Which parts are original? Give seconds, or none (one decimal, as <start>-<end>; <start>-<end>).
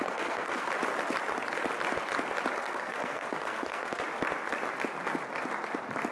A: 0.7-2.6; 4.0-6.1